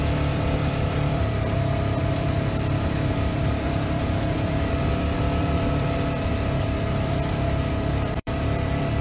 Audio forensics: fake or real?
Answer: fake